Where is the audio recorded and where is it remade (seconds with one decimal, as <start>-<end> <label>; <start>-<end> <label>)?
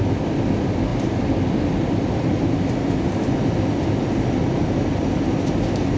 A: 0.0-6.0 recorded